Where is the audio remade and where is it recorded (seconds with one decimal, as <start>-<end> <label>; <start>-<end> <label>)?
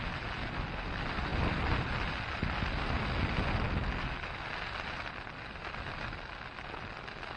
0.0-7.4 recorded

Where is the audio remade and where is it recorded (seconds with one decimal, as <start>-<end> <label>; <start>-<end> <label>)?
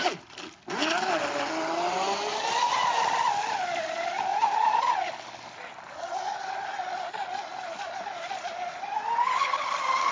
0.0-4.3 recorded; 4.3-5.1 remade; 5.1-10.1 recorded